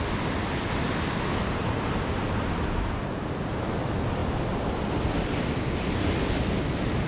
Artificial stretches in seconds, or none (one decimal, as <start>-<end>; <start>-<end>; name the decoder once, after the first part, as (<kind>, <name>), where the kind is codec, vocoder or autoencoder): none